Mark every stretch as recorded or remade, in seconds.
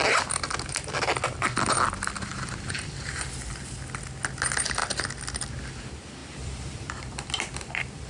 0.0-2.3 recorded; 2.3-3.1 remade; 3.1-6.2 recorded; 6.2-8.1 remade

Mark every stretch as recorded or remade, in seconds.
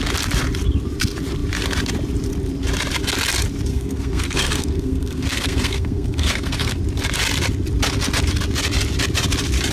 0.0-3.7 recorded; 3.7-6.8 remade; 6.8-9.7 recorded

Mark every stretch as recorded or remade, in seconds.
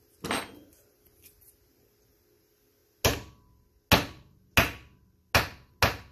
0.0-6.1 recorded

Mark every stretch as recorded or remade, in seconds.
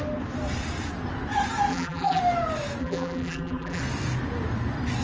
0.0-1.7 recorded; 1.7-2.2 remade; 2.2-2.8 recorded; 2.8-3.8 remade; 3.8-5.0 recorded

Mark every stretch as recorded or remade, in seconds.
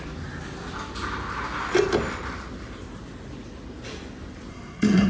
0.0-4.5 recorded; 4.5-5.1 remade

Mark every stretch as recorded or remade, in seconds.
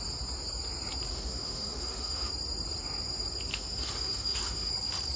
0.0-1.1 recorded; 1.1-2.3 remade; 2.3-3.5 recorded; 3.5-4.7 remade; 4.7-5.2 recorded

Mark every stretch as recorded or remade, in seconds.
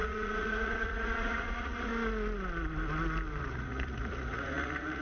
0.0-1.9 remade; 1.9-3.4 recorded; 3.4-5.0 remade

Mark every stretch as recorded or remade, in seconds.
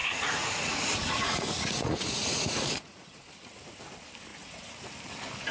0.0-3.3 remade; 3.3-4.3 recorded; 4.3-4.8 remade; 4.8-5.5 recorded